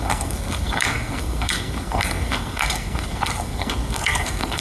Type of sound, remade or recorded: remade